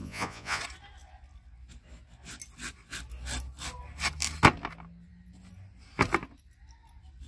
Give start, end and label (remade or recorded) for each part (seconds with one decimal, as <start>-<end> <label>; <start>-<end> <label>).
0.0-0.6 remade; 0.6-7.3 recorded